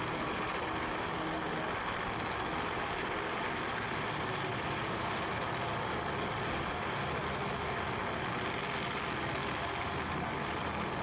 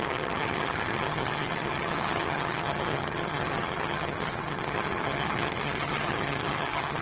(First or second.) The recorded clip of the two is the first